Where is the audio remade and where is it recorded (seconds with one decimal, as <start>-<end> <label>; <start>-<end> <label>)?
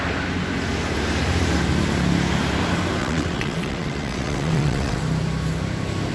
0.0-3.0 recorded; 3.0-5.0 remade; 5.0-6.1 recorded